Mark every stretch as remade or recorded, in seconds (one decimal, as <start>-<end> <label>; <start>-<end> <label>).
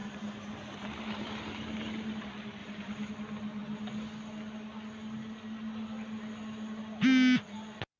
0.0-1.3 remade; 1.3-2.6 recorded; 2.6-3.1 remade; 3.1-8.0 recorded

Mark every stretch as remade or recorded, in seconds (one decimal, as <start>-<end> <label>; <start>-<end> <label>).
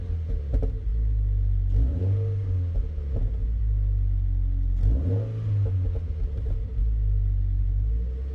0.0-6.8 recorded; 6.8-7.6 remade; 7.6-8.3 recorded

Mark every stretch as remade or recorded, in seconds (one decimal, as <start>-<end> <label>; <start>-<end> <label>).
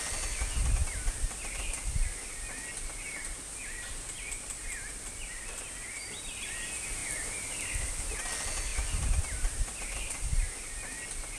0.0-8.7 recorded; 8.7-10.5 remade; 10.5-11.4 recorded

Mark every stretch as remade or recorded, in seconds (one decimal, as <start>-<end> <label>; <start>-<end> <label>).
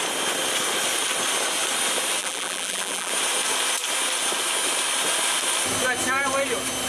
0.0-2.2 recorded; 2.2-3.1 remade; 3.1-6.9 recorded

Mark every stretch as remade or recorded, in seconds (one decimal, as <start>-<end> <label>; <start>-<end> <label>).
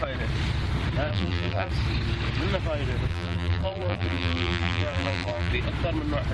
0.0-1.1 recorded; 1.1-1.7 remade; 1.7-3.1 recorded; 3.1-5.5 remade; 5.5-6.3 recorded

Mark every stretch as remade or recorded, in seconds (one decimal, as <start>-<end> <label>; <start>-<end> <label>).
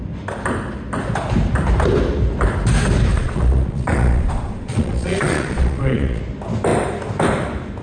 0.0-3.1 recorded; 3.1-6.2 remade; 6.2-7.8 recorded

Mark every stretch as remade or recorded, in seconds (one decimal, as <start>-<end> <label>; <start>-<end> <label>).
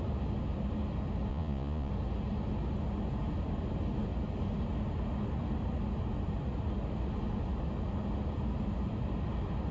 0.0-1.3 recorded; 1.3-1.9 remade; 1.9-9.7 recorded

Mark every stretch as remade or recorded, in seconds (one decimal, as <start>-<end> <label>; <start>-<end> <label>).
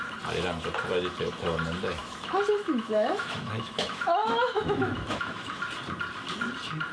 0.0-2.0 recorded; 2.0-5.6 remade; 5.6-6.9 recorded